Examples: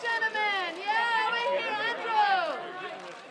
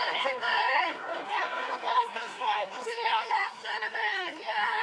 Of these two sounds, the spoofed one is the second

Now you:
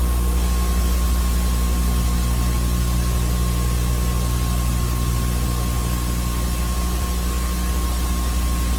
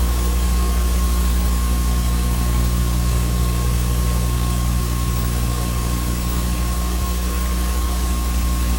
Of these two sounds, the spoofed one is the second